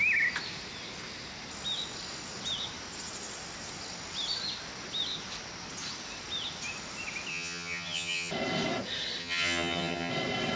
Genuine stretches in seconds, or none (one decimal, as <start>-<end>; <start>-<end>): 0.0-7.3; 8.3-9.2; 10.1-10.6